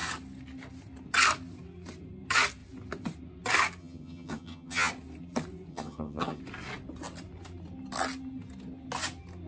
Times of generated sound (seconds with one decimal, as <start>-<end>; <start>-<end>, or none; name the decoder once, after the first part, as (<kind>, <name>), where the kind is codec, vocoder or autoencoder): 3.8-4.9 (vocoder, HiFi-GAN); 5.7-6.4